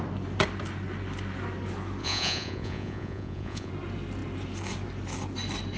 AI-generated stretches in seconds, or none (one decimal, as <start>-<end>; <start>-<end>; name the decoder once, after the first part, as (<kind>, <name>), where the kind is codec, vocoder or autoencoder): 2.0-3.7 (vocoder, Vocos)